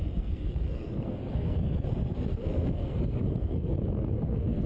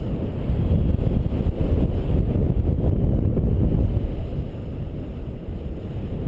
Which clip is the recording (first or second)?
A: second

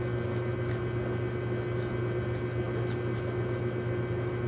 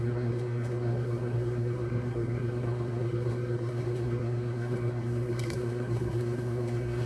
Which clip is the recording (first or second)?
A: first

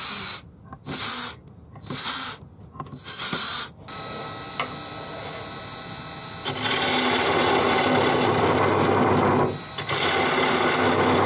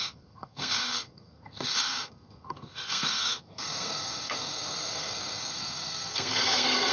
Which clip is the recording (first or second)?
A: first